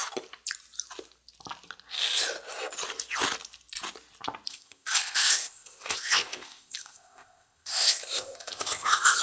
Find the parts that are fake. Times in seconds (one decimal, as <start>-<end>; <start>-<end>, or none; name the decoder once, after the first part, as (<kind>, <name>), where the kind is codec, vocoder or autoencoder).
4.5-9.2 (codec, ZipCodec)